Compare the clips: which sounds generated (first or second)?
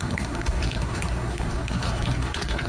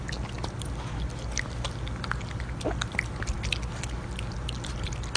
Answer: first